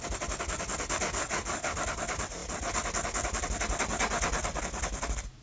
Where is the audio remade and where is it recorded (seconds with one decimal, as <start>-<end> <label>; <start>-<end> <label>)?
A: 0.0-5.4 recorded